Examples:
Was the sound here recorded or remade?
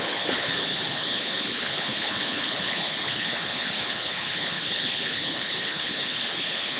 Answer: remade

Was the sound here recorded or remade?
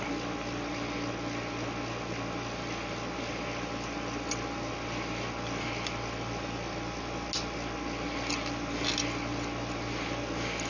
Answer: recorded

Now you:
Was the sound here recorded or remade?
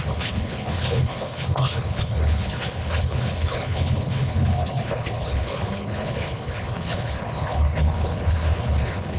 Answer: remade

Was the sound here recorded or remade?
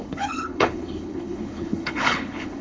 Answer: remade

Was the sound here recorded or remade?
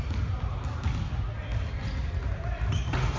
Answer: recorded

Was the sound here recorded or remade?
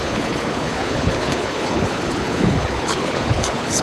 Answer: remade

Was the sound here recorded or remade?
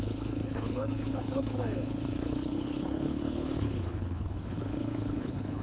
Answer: remade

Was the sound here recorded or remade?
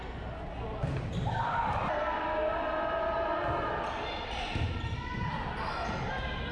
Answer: recorded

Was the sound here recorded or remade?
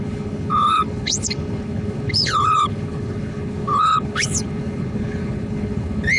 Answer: remade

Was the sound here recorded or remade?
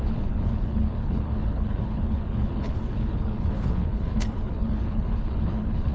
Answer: remade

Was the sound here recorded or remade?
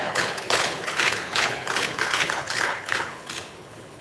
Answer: remade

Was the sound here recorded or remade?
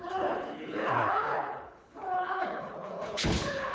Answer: remade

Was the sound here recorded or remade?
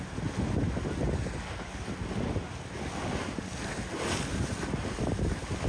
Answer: recorded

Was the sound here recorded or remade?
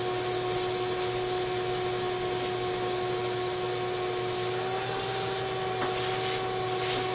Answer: recorded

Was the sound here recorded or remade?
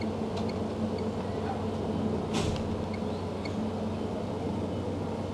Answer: recorded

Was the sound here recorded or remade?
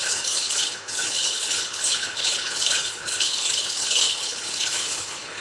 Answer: remade